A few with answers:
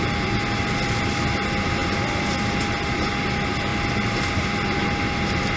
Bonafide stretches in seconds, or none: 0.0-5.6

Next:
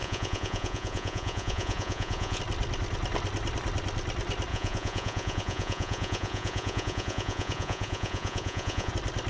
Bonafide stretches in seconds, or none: 2.4-4.5; 8.9-9.3

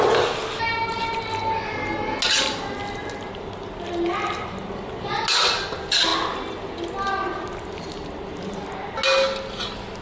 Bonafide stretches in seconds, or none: 0.0-10.0

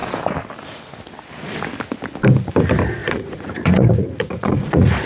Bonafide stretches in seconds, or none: 0.0-3.0

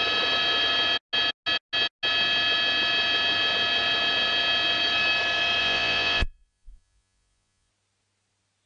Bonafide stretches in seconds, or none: 0.0-5.6; 7.7-8.7